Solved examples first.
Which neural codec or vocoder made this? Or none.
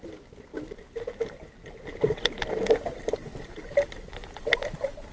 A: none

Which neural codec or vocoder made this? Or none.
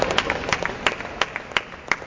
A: none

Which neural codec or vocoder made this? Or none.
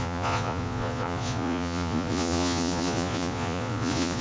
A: vocoder, Vocos